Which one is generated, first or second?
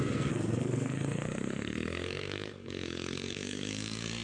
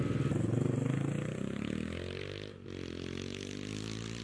first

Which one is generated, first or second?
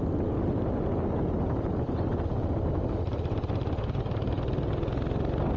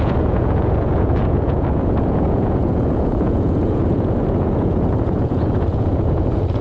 second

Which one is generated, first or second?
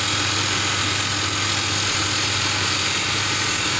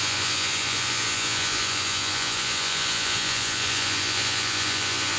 second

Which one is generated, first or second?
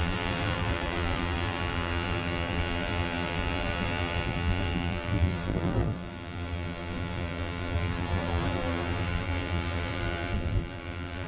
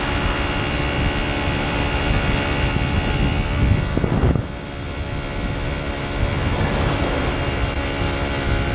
first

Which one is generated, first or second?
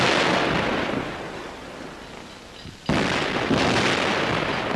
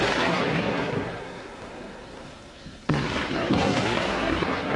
second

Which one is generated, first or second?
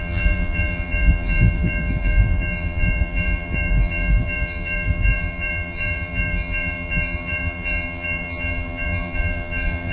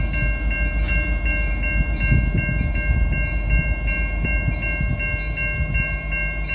first